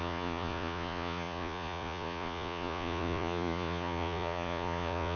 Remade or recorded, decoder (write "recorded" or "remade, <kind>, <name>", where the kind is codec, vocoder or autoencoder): remade, vocoder, Vocos